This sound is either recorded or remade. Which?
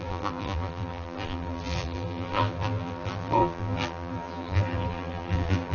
remade